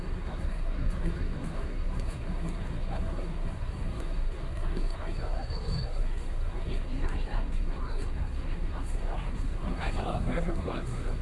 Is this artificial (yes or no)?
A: yes